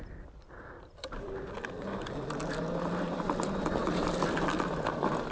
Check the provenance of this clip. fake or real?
real